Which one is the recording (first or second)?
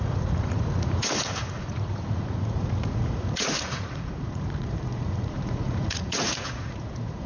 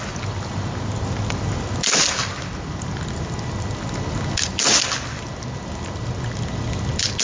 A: second